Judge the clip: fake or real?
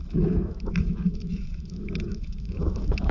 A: fake